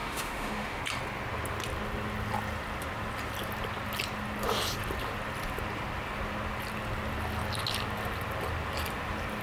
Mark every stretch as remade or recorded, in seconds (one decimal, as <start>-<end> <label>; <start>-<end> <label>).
0.0-0.8 remade; 0.8-9.4 recorded

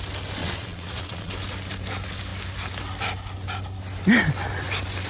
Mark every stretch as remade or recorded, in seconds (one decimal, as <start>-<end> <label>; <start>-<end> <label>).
0.0-0.4 recorded; 0.4-1.3 remade; 1.3-5.1 recorded